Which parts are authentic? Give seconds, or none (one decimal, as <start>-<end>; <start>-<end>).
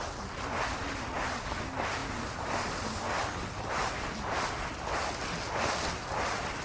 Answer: 0.0-6.6